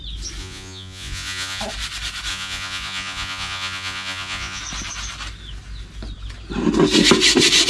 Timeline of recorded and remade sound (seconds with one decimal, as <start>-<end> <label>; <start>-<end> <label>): 0.0-0.4 recorded; 0.4-1.6 remade; 1.6-2.3 recorded; 2.3-4.6 remade; 4.6-7.7 recorded